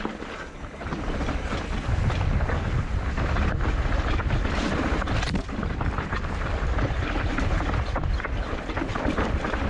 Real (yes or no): no